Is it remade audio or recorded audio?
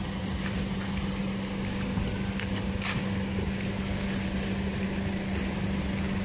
recorded